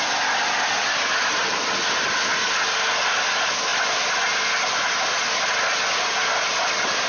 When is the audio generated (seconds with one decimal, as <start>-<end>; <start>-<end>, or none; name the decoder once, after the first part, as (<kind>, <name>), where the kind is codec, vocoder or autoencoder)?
none